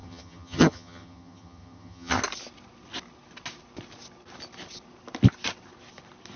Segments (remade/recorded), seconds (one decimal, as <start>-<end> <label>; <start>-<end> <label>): 0.0-2.2 remade; 2.2-6.4 recorded